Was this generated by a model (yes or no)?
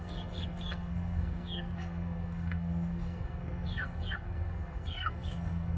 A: yes